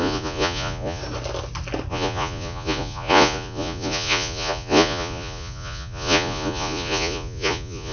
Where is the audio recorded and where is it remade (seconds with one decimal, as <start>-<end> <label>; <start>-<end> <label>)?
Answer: 0.0-1.0 remade; 1.0-1.9 recorded; 1.9-7.9 remade